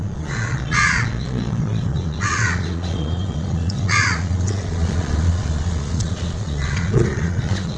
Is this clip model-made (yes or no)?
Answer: yes